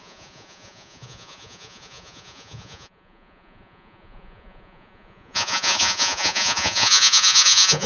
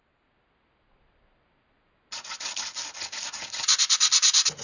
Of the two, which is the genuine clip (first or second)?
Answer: second